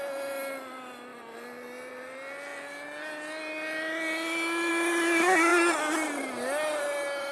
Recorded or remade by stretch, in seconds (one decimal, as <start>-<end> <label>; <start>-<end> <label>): 0.0-7.3 recorded